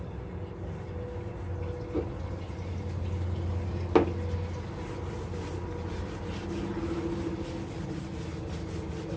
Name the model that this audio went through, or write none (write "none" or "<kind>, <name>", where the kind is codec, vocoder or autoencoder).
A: none